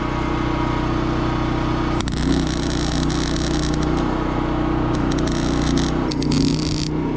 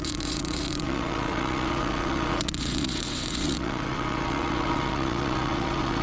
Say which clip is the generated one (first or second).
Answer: second